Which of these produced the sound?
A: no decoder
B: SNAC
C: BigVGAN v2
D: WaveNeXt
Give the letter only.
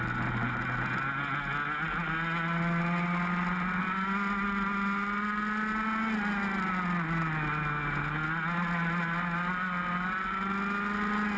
A